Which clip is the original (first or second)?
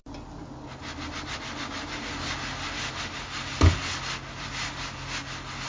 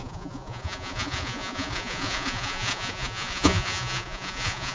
first